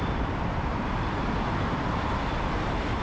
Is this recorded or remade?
remade